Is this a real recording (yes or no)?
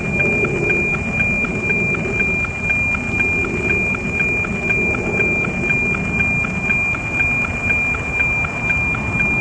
yes